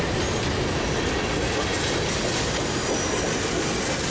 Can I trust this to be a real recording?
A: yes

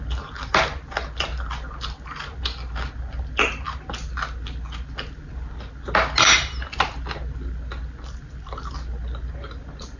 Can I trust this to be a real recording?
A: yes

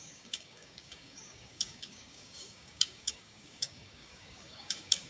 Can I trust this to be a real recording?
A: no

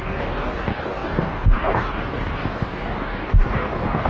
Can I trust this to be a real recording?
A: no